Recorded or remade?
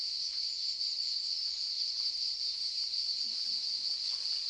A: recorded